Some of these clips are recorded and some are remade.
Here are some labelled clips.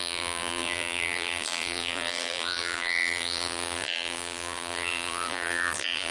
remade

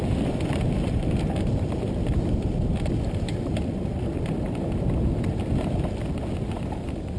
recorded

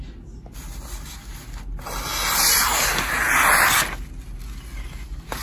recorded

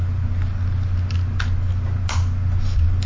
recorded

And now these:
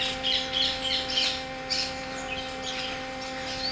recorded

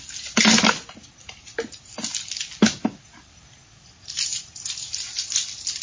recorded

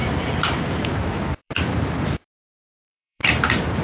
remade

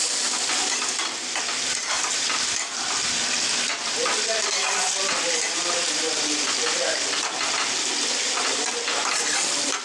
recorded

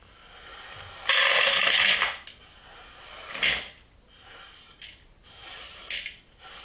recorded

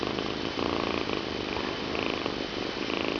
remade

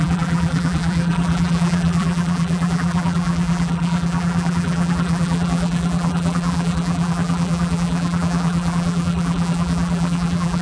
remade